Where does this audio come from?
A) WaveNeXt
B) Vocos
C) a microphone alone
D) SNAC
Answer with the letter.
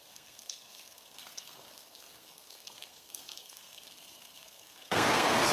D